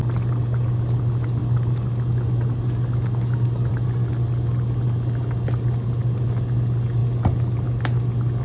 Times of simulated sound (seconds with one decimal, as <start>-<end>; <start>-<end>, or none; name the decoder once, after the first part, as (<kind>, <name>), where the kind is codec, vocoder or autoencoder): none